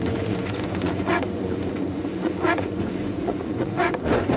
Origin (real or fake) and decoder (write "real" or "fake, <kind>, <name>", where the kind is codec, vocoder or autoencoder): fake, vocoder, Vocos